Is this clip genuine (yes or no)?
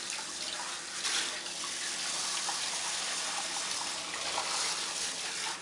yes